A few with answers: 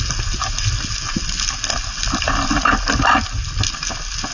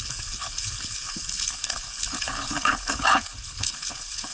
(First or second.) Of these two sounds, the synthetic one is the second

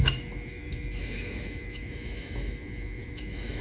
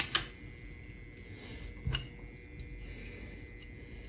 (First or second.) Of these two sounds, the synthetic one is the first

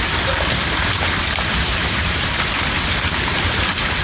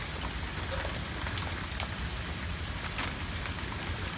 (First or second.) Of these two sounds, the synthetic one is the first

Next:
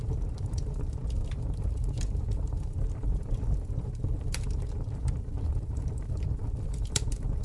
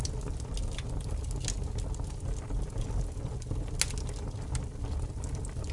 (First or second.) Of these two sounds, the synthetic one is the first